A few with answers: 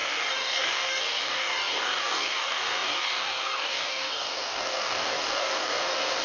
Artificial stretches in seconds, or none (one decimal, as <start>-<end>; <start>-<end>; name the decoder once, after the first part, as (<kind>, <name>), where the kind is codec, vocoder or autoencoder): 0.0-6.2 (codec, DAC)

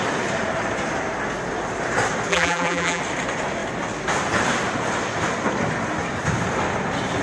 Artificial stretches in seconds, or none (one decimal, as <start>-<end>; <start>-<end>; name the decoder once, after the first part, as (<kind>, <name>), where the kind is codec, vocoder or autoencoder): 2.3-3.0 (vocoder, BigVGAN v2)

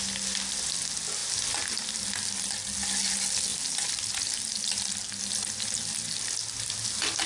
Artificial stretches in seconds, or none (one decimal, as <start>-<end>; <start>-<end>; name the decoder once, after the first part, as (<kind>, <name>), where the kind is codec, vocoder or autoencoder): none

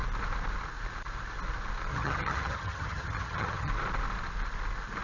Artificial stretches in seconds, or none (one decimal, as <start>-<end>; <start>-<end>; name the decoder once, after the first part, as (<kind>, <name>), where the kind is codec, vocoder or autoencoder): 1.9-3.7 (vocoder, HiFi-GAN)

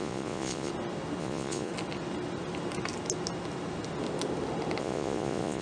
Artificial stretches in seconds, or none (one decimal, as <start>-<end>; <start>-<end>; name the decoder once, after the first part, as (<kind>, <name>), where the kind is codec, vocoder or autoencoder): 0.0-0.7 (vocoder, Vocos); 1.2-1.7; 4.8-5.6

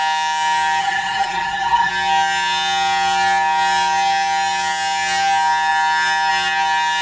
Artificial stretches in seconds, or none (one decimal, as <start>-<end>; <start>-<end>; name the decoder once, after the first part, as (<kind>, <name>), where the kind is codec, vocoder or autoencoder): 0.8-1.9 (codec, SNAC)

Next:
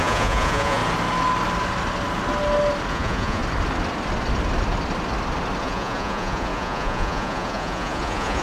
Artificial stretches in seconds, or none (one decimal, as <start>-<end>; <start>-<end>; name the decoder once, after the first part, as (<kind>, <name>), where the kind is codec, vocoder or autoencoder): 0.0-0.8 (vocoder, Vocos); 2.9-3.4; 5.6-8.4

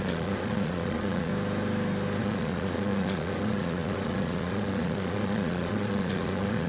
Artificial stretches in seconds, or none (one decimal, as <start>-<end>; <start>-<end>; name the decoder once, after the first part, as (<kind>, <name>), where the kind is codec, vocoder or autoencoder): 0.0-1.3 (vocoder, Vocos); 2.2-6.7